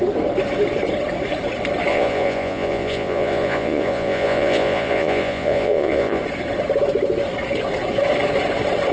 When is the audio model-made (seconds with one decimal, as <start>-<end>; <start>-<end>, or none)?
1.9-6.2